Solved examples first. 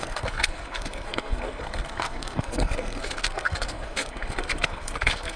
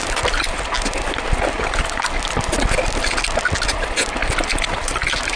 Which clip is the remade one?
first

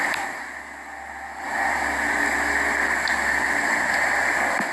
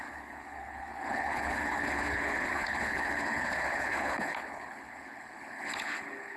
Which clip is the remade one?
second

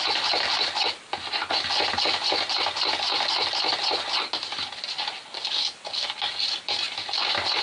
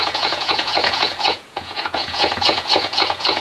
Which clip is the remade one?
second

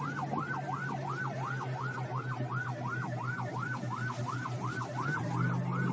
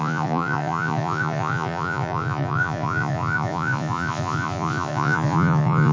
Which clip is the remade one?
second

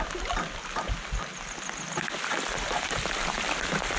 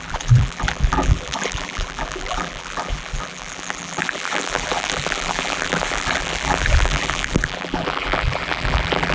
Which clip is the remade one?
second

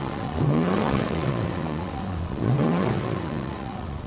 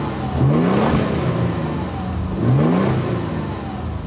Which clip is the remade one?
first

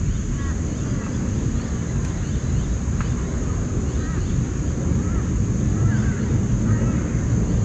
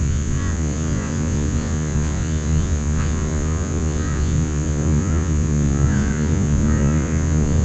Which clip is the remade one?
second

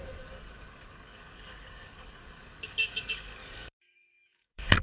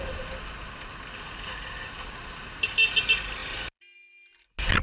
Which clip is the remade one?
first